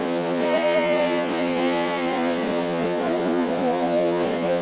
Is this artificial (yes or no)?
yes